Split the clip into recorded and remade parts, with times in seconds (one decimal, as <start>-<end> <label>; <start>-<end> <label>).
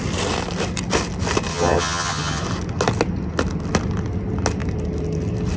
0.0-1.5 recorded; 1.5-2.4 remade; 2.4-5.6 recorded